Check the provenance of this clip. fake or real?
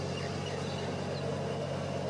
real